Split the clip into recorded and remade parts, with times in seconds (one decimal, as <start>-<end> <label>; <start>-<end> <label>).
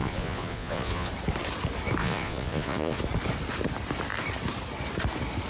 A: 0.0-1.1 remade; 1.1-2.0 recorded; 2.0-3.0 remade; 3.0-5.5 recorded